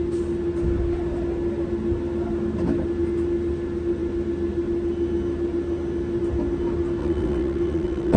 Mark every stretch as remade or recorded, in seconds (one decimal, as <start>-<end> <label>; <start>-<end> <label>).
0.0-7.0 recorded; 7.0-8.2 remade